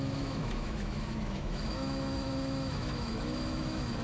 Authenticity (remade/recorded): remade